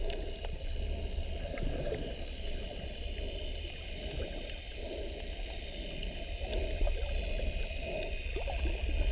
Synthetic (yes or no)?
no